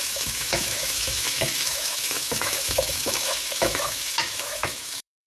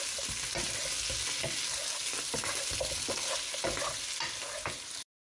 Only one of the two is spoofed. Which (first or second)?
first